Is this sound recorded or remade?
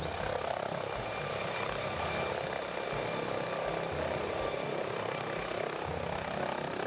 recorded